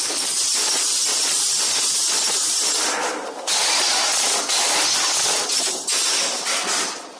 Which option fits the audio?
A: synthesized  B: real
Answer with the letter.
B